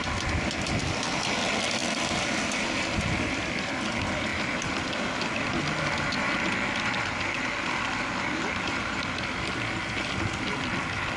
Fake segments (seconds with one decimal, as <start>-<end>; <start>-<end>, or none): 1.8-3.7

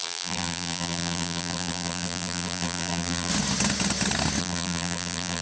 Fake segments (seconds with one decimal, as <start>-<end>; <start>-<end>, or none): 0.0-3.3; 4.4-5.4

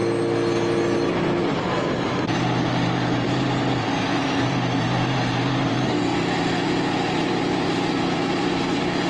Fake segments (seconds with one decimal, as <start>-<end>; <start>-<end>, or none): 1.4-9.1

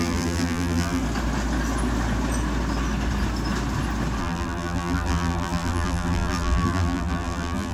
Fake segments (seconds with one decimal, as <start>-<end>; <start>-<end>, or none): 0.0-1.0; 4.2-7.7

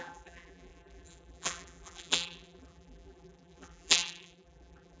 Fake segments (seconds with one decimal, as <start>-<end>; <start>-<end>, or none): 0.0-5.0